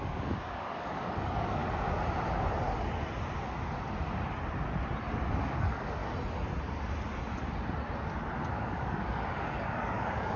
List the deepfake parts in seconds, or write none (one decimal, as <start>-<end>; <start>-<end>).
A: 0.0-1.6; 5.3-6.0; 8.5-10.4